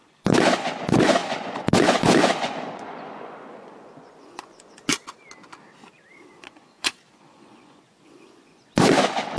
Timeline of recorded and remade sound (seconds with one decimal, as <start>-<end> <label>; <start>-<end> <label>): 0.0-4.9 remade; 4.9-6.3 recorded; 6.3-9.4 remade